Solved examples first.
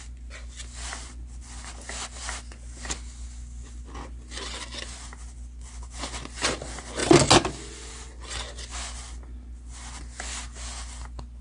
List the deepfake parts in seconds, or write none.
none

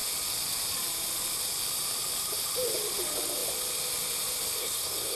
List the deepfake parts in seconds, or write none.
4.6-5.2

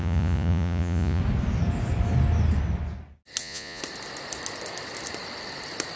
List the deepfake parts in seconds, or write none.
0.0-1.2; 3.4-3.8